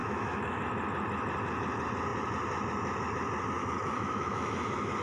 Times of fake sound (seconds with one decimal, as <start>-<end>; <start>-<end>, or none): 0.0-0.6; 3.6-5.0